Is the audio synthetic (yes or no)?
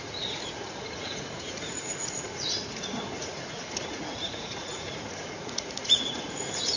yes